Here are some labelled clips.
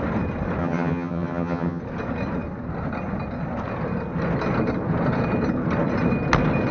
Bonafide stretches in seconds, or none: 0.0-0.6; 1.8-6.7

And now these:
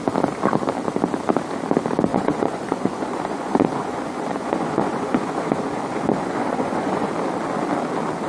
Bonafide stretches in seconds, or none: 0.0-2.1; 7.1-8.3

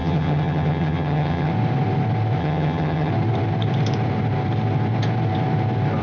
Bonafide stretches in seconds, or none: 1.5-2.4; 3.1-6.0